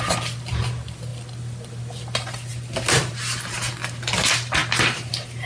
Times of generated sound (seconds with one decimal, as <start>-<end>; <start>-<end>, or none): none